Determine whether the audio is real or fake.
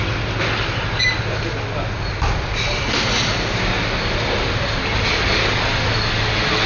real